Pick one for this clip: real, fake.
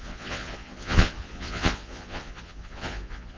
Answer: fake